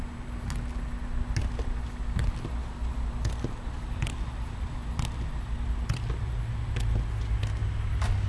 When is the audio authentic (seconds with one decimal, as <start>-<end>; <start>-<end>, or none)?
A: 0.0-8.3